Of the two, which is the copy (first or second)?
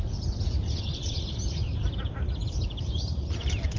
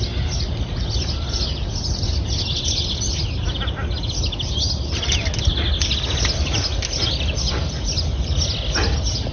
first